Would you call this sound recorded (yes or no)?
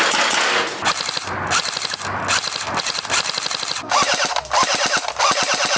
yes